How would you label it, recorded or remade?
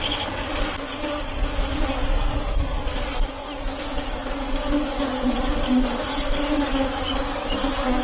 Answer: recorded